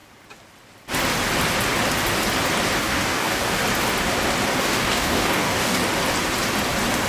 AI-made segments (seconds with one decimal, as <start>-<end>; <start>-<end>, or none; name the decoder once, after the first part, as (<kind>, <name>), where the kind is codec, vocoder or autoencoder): 2.8-3.6 (codec, DAC); 4.6-5.8